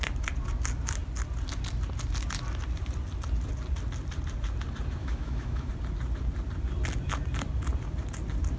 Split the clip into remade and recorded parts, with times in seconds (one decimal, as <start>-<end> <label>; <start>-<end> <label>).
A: 0.0-5.0 recorded; 5.0-5.7 remade; 5.7-8.6 recorded